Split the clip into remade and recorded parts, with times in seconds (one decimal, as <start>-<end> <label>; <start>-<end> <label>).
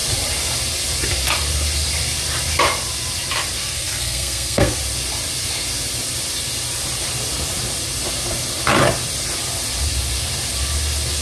0.0-3.6 recorded; 3.6-4.8 remade; 4.8-11.2 recorded